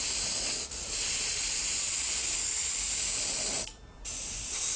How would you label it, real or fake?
real